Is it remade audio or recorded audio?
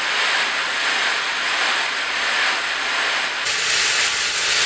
recorded